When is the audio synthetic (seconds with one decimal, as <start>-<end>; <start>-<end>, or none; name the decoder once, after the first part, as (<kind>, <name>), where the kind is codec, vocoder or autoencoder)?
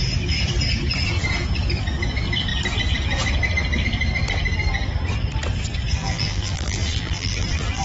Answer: 6.0-7.8 (vocoder, BigVGAN v2)